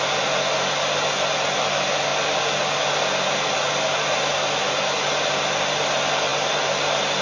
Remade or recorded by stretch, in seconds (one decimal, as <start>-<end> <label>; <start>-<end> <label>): 0.0-7.2 recorded